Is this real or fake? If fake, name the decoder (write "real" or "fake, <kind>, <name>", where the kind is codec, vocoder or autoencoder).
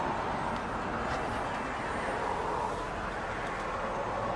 real